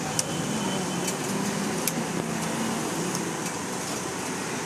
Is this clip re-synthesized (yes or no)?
no